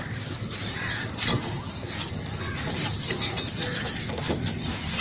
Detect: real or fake real